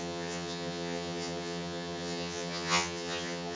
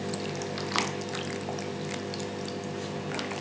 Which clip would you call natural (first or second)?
second